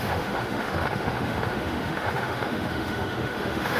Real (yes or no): no